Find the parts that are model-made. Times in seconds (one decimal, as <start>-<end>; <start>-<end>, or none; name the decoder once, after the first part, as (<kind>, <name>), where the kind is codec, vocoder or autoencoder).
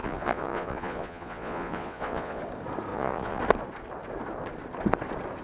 0.0-2.4 (vocoder, Vocos); 2.9-3.4